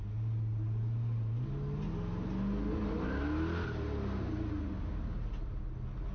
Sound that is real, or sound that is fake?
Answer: real